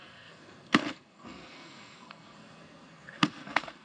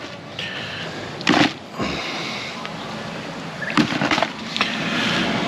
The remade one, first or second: first